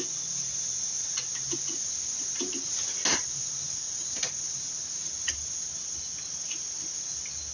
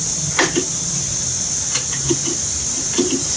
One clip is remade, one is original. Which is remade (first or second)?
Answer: second